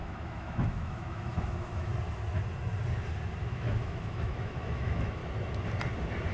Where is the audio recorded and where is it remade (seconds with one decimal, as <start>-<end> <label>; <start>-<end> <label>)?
0.0-1.9 remade; 1.9-3.4 recorded; 3.4-5.2 remade; 5.2-6.3 recorded